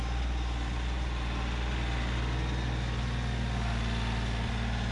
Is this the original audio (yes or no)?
yes